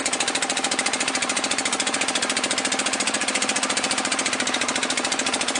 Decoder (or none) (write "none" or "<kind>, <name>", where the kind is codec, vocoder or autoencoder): vocoder, BigVGAN v2